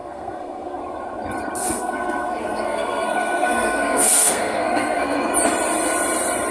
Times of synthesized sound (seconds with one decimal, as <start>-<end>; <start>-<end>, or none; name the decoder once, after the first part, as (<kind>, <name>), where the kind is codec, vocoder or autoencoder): 0.0-0.8 (codec, SNAC); 1.6-5.3